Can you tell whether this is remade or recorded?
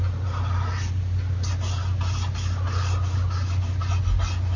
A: recorded